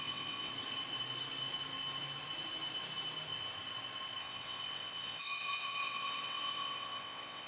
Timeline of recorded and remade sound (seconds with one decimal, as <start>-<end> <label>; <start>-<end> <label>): 0.0-0.5 remade; 0.5-4.2 recorded; 4.2-7.5 remade